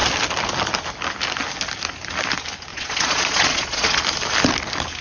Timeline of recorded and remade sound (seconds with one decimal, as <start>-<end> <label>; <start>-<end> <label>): 0.0-2.7 recorded; 2.7-4.0 remade; 4.0-5.0 recorded